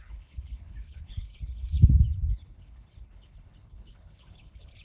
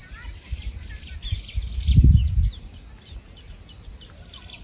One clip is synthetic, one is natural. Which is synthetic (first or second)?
first